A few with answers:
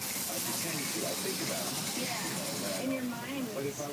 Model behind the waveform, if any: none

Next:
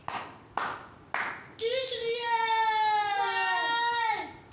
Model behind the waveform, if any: none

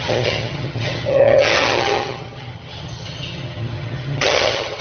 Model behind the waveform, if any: vocoder, HiFi-GAN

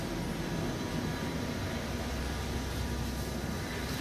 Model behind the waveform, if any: none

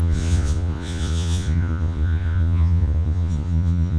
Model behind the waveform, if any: vocoder, Vocos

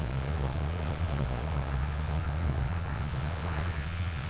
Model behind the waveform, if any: vocoder, Vocos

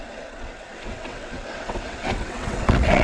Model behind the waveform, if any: vocoder, WaveNeXt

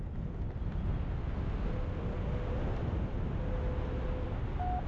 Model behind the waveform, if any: none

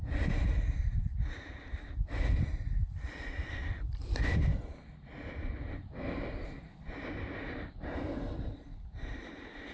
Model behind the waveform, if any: none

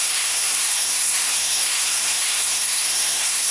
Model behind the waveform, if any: codec, SNAC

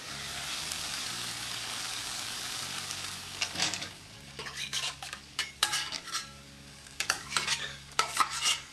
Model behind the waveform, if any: codec, DAC